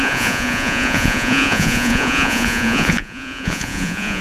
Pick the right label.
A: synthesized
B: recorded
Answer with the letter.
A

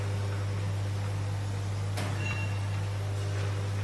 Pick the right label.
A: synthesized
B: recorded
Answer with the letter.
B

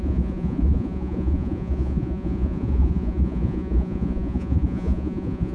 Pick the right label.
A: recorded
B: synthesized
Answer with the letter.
B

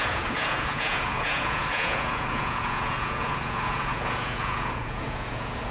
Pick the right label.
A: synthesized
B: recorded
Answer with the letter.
A